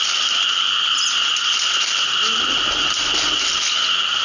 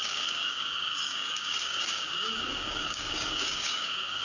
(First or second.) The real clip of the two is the first